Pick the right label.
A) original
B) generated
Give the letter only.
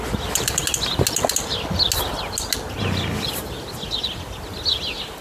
A